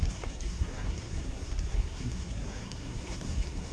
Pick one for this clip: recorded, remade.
remade